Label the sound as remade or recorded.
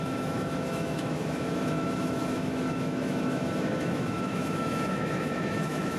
remade